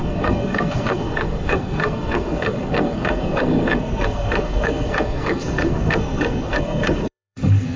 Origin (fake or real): fake